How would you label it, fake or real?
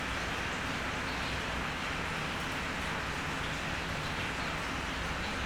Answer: real